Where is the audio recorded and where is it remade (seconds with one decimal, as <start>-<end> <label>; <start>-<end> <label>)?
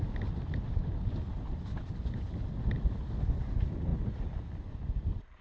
0.0-5.4 recorded